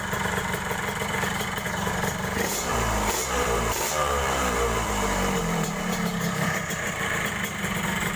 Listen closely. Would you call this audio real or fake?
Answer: fake